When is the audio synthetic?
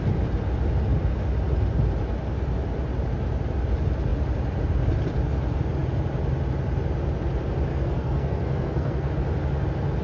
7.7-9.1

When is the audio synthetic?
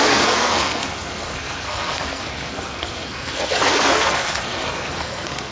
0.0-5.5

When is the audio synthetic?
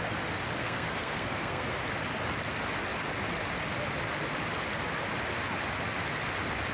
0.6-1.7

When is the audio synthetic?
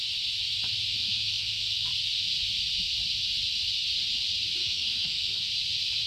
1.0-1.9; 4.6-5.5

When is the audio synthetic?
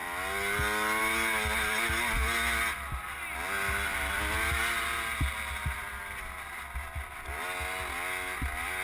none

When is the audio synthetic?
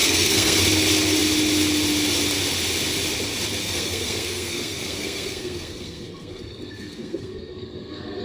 0.0-0.6; 3.6-8.2